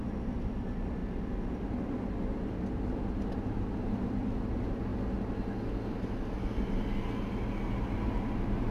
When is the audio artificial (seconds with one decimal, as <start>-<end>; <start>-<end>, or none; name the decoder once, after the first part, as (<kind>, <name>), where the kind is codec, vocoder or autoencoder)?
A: 0.0-1.0 (vocoder, BigVGAN v2); 2.7-4.9; 8.0-8.7